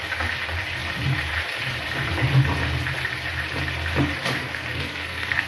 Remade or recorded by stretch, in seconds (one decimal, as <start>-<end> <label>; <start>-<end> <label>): 0.0-4.4 recorded; 4.4-5.5 remade